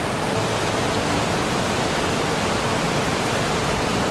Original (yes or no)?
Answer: yes